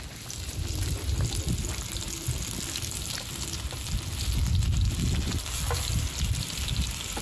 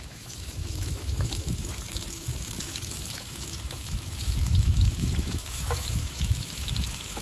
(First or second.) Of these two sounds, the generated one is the second